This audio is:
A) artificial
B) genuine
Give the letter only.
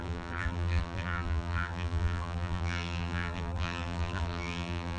A